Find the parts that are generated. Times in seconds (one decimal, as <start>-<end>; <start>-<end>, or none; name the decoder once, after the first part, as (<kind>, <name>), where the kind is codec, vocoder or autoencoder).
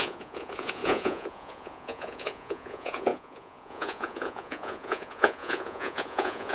0.0-6.5 (vocoder, Vocos)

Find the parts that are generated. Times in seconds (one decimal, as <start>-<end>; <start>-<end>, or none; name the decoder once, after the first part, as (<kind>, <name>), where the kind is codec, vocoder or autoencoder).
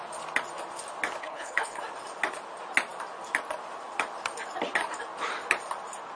1.2-1.8 (codec, HILCodec)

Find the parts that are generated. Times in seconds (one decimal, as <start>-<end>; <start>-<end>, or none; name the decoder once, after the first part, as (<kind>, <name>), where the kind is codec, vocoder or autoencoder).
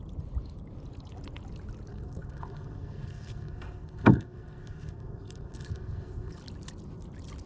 1.9-6.4 (codec, SNAC)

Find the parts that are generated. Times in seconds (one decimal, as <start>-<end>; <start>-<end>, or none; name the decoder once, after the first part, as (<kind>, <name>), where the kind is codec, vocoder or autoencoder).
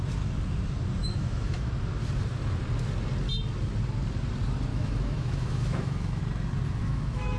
1.0-1.7 (autoencoder, DAC-VAE); 4.7-6.2; 6.8-7.4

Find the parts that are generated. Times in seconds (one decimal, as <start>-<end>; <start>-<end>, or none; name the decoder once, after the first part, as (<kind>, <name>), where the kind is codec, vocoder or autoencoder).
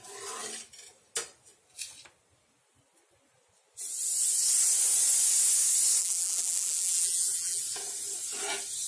6.0-7.6 (vocoder, BigVGAN v2)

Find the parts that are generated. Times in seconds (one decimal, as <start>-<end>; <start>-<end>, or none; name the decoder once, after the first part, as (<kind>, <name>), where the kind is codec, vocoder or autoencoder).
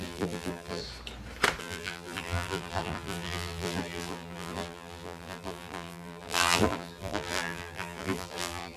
0.0-0.8 (vocoder, BigVGAN v2); 1.6-8.8